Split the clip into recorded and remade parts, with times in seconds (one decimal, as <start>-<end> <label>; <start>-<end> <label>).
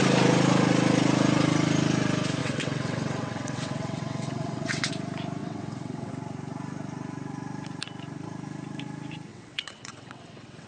0.0-2.4 recorded; 2.4-4.9 remade; 4.9-5.4 recorded; 5.4-6.1 remade; 6.1-9.3 recorded; 9.3-10.7 remade